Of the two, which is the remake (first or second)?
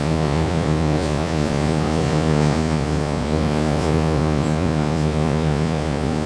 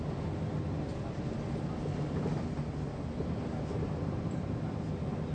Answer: first